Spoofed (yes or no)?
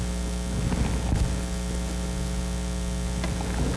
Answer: no